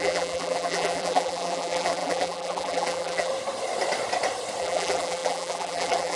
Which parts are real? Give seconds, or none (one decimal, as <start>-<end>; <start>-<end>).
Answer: 3.3-4.6